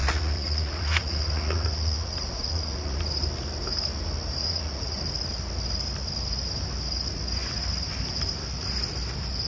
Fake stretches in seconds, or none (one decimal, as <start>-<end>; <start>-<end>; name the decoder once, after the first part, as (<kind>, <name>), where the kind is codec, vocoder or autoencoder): 0.0-3.0 (vocoder, Vocos); 4.4-5.0